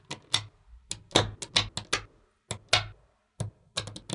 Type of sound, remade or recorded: recorded